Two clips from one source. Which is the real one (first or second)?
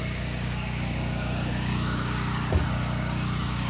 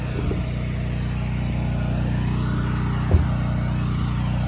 second